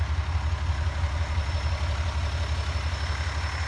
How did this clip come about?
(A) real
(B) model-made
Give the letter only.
A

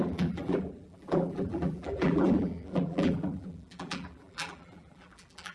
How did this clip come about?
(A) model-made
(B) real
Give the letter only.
A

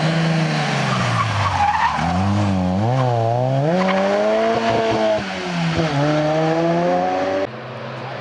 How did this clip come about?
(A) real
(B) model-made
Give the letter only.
A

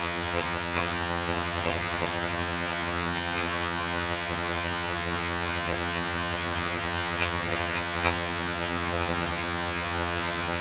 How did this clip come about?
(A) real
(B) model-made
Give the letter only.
B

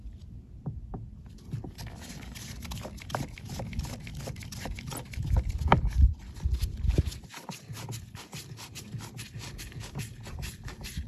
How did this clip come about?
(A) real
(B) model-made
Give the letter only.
A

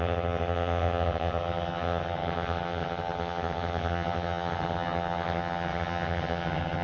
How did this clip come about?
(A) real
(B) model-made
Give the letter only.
B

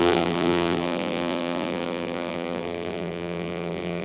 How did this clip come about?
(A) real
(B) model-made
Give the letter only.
B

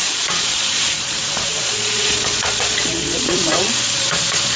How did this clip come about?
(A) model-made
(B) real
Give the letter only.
A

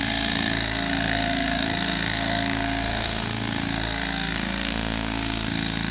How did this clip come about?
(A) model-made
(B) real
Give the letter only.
A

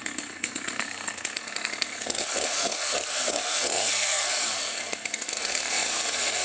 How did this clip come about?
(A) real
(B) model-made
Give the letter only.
B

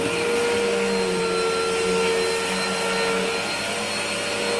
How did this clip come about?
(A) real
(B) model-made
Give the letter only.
A